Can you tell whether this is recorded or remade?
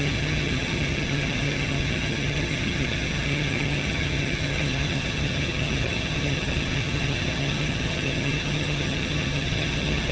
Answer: remade